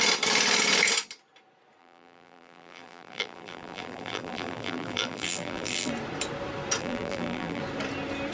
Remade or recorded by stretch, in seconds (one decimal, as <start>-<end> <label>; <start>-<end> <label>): 0.0-1.8 recorded; 1.8-5.9 remade; 5.9-6.8 recorded; 6.8-7.6 remade; 7.6-8.3 recorded